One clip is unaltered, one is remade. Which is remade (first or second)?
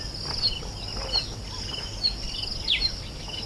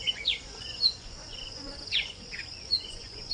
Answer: second